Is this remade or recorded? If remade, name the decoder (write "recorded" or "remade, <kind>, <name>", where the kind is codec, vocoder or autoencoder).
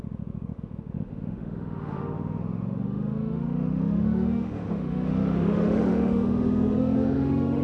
remade, autoencoder, DAC-VAE